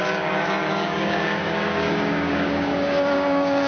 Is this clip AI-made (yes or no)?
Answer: yes